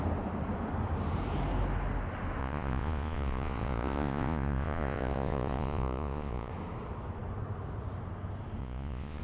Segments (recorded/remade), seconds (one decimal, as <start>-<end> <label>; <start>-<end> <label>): 0.0-2.4 recorded; 2.4-6.5 remade; 6.5-8.6 recorded; 8.6-9.2 remade